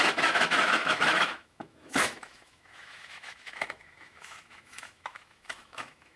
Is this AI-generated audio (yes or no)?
yes